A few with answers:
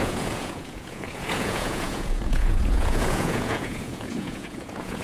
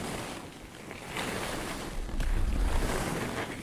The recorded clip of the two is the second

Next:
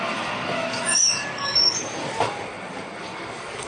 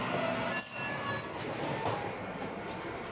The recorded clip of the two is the second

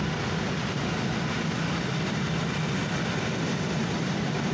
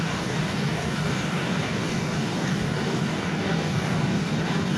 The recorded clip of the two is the first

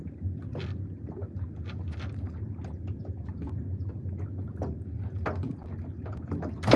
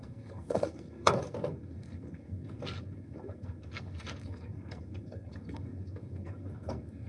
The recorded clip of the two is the first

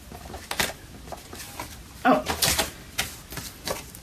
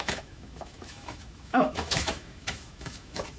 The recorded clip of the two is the first